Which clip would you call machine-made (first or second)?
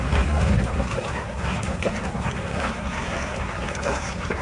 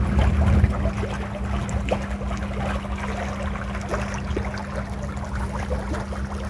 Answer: first